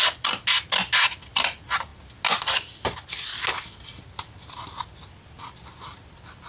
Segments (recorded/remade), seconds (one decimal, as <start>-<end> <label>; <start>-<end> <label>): 0.0-6.5 recorded